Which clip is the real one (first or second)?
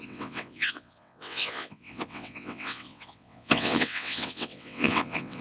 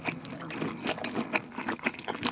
second